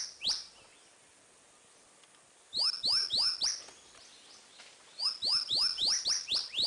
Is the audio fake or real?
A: real